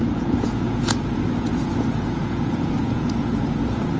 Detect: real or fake fake